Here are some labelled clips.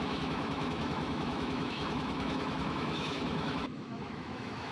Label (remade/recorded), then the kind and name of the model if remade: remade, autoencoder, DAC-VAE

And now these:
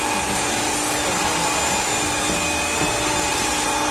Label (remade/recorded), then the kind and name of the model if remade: recorded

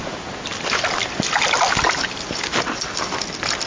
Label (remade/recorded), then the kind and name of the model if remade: recorded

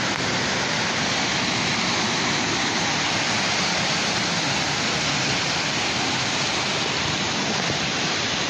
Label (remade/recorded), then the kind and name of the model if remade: recorded